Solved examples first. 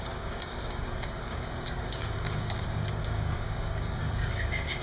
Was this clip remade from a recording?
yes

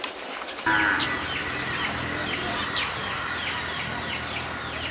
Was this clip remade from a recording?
no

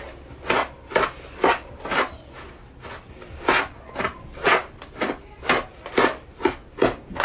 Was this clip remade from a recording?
no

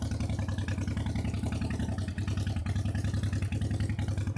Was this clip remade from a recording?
no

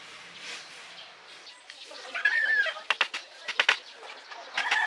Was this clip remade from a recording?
no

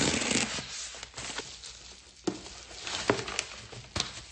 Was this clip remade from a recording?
no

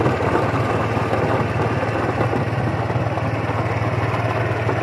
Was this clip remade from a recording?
no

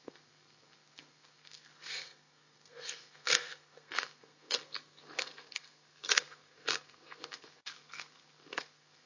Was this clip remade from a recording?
yes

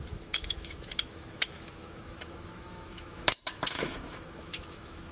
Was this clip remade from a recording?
yes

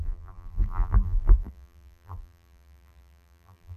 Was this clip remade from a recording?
yes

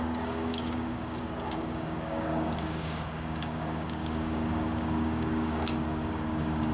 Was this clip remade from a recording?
yes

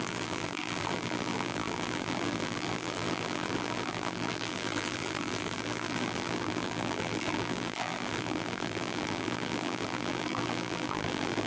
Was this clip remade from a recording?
yes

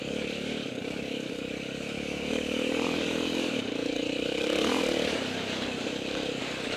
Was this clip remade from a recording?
yes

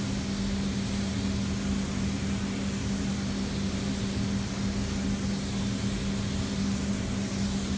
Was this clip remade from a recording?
no